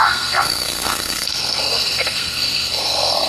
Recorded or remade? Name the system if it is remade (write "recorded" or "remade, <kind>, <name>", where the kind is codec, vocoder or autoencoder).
remade, codec, SNAC